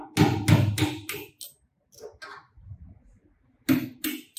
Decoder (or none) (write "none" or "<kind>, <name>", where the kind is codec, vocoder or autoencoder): none